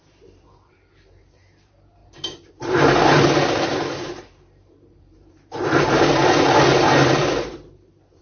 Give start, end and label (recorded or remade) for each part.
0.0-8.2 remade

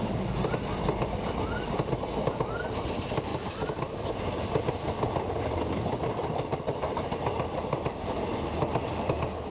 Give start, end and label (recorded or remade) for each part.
0.0-0.5 recorded; 0.5-9.5 remade

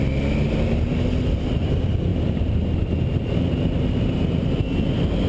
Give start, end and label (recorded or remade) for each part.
0.0-2.1 recorded; 2.1-2.6 remade; 2.6-5.3 recorded

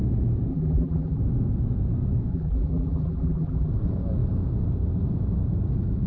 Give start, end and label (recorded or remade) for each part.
0.0-0.5 recorded; 0.5-1.2 remade; 1.2-2.3 recorded; 2.3-3.7 remade; 3.7-6.1 recorded

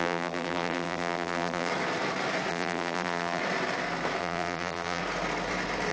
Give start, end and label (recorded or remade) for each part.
0.0-1.7 remade; 1.7-2.5 recorded; 2.5-3.4 remade; 3.4-4.2 recorded; 4.2-5.0 remade; 5.0-5.9 recorded